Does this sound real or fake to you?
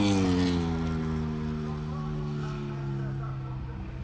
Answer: real